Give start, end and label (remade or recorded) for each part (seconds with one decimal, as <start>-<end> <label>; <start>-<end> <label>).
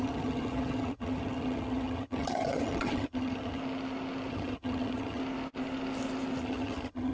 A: 0.0-3.6 remade; 3.6-4.3 recorded; 4.3-5.2 remade; 5.2-6.4 recorded; 6.4-7.1 remade